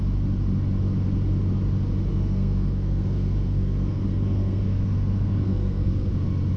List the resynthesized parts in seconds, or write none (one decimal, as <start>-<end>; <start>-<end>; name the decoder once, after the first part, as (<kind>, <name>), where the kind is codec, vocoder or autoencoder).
2.1-6.1 (codec, SNAC)

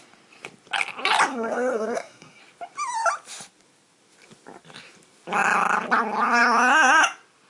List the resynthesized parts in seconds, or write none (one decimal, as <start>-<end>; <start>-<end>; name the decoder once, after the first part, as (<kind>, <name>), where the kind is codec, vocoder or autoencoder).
1.3-2.4 (codec, SNAC)